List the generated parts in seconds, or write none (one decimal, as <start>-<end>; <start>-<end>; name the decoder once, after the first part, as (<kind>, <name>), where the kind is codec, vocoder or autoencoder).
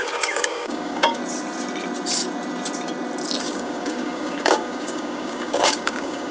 0.0-1.2 (codec, DAC); 3.4-6.3